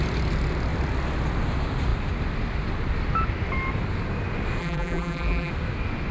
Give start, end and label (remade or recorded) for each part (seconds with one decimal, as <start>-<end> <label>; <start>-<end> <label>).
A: 0.0-4.6 recorded; 4.6-5.5 remade; 5.5-6.1 recorded